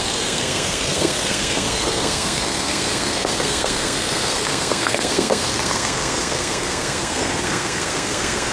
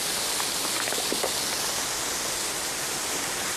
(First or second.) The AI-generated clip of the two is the first